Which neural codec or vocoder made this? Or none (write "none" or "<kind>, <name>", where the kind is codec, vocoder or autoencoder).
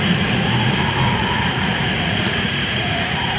vocoder, Vocos